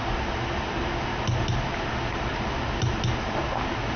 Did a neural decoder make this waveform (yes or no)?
no